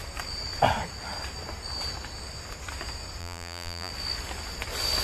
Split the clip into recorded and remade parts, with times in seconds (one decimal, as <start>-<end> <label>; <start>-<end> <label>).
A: 0.0-3.2 recorded; 3.2-3.9 remade; 3.9-5.0 recorded